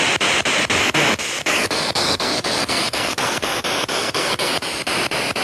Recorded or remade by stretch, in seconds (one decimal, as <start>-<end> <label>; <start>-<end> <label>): 0.0-1.4 recorded; 1.4-3.6 remade; 3.6-4.0 recorded; 4.0-4.5 remade; 4.5-5.4 recorded